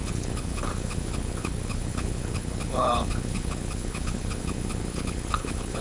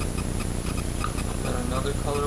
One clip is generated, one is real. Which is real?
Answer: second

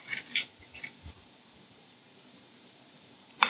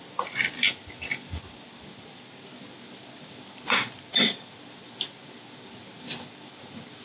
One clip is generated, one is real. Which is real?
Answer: second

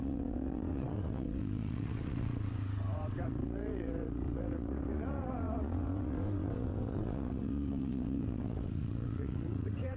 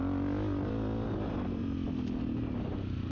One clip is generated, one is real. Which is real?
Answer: second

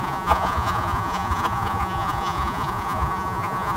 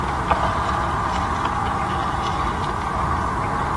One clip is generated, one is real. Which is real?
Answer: second